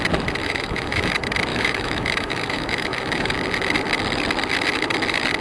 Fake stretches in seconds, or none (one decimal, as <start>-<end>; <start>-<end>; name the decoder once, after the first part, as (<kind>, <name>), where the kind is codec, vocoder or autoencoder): 0.4-1.1 (autoencoder, DAC-VAE); 1.5-3.3